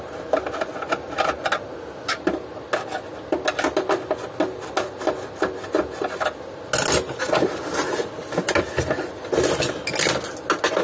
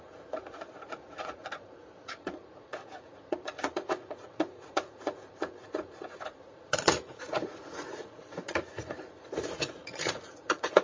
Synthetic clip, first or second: second